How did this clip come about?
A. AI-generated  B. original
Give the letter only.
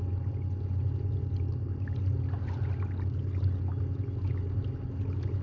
B